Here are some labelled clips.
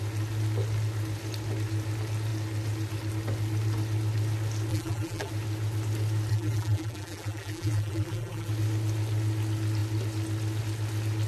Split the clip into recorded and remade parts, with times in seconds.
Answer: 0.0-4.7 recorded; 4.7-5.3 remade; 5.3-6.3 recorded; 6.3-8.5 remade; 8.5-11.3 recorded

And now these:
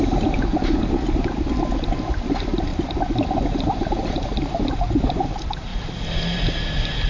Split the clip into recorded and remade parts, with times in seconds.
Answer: 0.0-7.1 recorded